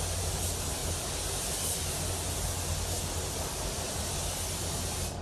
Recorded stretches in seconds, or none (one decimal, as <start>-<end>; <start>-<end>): 0.0-5.2